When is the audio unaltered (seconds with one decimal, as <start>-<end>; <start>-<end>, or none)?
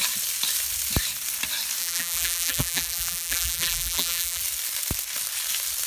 0.0-1.8; 4.4-5.9